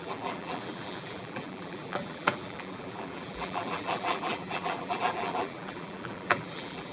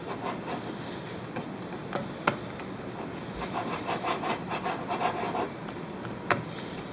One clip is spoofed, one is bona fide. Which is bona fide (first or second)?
second